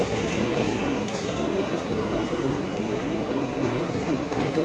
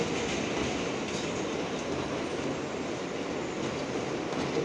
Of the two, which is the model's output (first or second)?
first